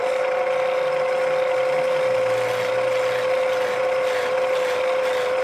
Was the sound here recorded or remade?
recorded